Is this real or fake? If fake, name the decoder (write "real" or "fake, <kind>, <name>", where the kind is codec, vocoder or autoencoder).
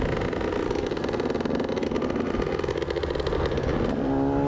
real